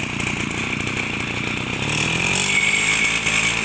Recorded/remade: recorded